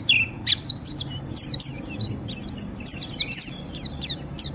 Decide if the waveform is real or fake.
real